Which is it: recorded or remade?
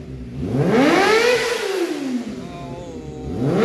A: recorded